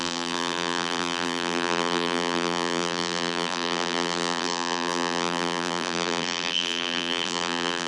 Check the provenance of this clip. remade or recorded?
remade